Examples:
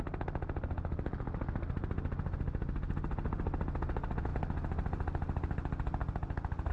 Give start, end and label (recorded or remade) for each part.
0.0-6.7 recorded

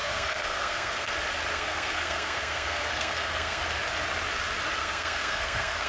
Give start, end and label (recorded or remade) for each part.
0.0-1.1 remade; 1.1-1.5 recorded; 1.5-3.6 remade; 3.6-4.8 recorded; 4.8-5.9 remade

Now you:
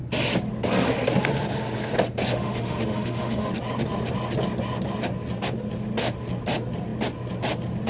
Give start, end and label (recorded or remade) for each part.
0.0-2.3 recorded; 2.3-3.5 remade; 3.5-7.9 recorded

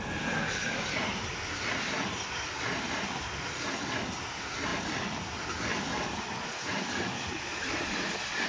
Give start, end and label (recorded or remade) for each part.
0.0-8.5 recorded

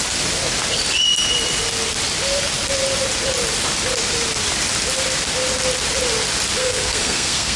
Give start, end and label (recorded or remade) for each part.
0.0-6.6 recorded; 6.6-7.6 remade

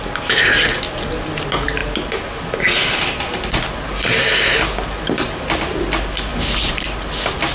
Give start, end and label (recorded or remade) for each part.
0.0-7.5 recorded

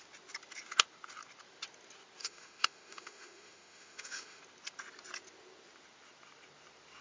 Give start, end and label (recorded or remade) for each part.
0.0-2.2 recorded; 2.2-4.4 remade; 4.4-7.0 recorded

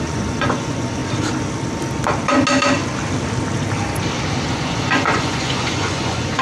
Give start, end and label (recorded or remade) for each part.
0.0-1.0 remade; 1.0-4.5 recorded; 4.5-6.4 remade